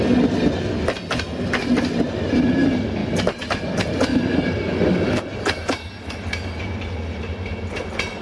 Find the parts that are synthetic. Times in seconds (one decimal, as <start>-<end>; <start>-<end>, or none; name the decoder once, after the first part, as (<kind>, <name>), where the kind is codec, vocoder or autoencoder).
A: none

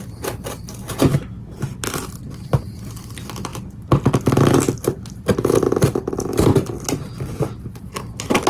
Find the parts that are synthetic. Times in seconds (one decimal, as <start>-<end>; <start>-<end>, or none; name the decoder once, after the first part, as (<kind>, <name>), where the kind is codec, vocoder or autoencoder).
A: none

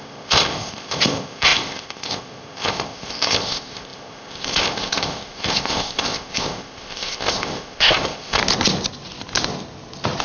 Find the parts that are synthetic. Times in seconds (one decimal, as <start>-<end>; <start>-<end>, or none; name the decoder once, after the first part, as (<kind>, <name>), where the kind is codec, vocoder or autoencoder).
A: 0.0-8.4 (codec, ZipCodec)

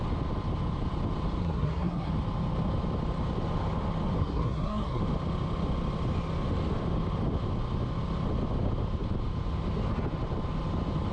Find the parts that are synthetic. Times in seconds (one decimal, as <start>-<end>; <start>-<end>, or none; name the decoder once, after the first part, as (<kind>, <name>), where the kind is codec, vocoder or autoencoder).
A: 1.4-2.1 (codec, SNAC); 4.2-5.0